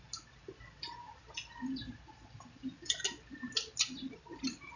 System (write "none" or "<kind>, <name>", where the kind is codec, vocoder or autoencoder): none